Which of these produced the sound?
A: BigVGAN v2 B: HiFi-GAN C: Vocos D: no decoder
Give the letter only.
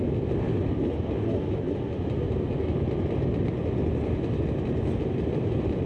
D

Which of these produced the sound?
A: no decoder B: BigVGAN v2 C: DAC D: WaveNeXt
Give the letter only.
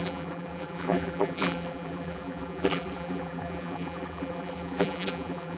B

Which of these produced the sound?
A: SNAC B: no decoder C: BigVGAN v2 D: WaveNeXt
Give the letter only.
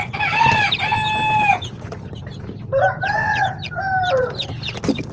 C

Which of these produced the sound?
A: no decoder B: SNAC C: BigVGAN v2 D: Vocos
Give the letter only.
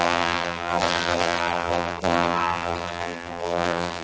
C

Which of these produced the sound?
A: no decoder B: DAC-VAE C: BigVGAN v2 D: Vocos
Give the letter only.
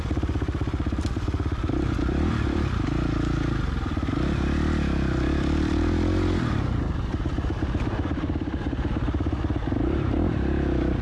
C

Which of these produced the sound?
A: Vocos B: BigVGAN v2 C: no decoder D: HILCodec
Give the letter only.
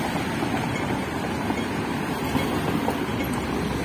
C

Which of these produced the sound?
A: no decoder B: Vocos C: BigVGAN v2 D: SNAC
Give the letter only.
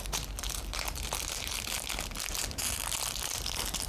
A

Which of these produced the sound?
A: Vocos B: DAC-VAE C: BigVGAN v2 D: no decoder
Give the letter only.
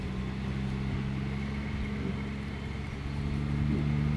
D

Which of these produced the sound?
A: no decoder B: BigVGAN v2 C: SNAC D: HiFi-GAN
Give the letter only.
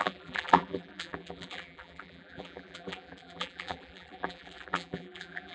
B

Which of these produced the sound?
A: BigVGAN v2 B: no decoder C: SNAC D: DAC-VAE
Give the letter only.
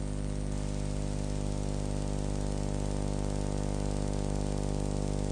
B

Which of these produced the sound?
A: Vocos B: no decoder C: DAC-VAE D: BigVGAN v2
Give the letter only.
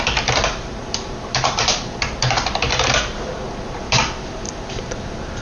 D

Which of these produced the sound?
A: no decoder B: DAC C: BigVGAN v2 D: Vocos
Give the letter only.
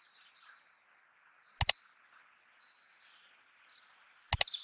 A